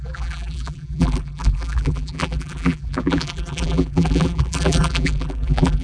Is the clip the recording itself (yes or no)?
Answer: no